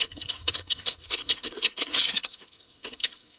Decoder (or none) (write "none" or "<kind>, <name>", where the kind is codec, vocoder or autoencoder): codec, SNAC